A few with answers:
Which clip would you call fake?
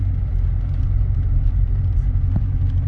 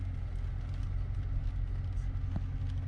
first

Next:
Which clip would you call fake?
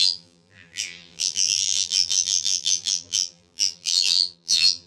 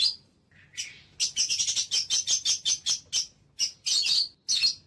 first